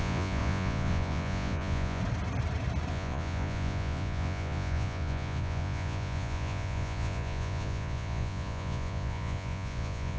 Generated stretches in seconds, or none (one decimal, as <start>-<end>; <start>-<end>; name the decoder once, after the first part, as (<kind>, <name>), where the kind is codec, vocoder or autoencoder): 0.0-2.0 (vocoder, Vocos); 2.9-10.2